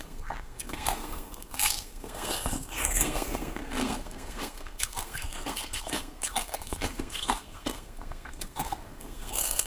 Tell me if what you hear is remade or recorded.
remade